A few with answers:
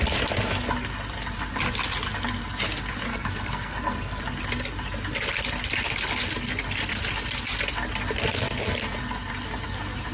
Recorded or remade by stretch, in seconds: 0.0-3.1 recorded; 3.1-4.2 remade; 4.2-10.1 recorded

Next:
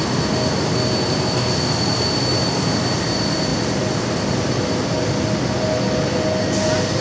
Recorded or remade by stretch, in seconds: 0.0-7.0 recorded

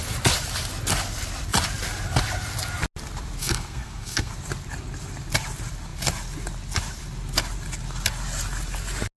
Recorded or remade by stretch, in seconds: 0.0-3.4 recorded; 3.4-4.3 remade; 4.3-9.2 recorded

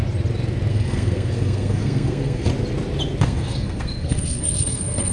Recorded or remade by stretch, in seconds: 0.0-0.7 recorded; 0.7-2.5 remade; 2.5-3.2 recorded; 3.2-5.1 remade

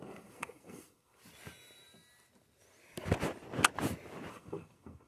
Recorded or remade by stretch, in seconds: 0.0-1.2 remade; 1.2-4.3 recorded; 4.3-5.1 remade

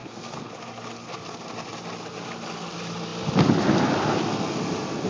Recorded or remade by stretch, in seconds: 0.0-0.5 remade; 0.5-5.1 recorded

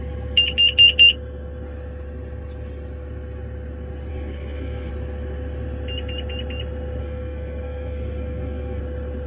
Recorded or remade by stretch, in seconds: 0.0-4.1 recorded; 4.1-4.9 remade; 4.9-7.0 recorded; 7.0-8.8 remade; 8.8-9.3 recorded